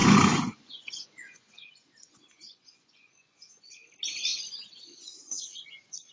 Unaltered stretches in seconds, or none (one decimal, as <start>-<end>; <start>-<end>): 3.7-4.3